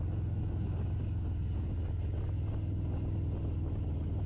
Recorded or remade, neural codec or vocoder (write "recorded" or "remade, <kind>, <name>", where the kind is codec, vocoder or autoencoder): recorded